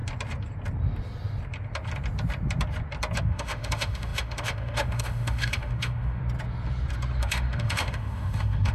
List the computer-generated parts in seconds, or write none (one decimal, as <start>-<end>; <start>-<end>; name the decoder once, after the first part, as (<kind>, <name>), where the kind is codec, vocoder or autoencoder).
3.2-6.2 (autoencoder, DAC-VAE); 7.2-8.7